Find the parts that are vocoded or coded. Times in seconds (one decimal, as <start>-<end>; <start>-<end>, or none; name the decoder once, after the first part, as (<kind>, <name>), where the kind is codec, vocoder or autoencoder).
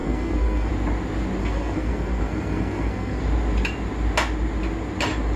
0.0-0.7 (codec, SNAC); 1.4-3.2